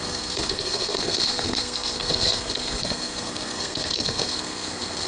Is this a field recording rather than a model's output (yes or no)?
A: no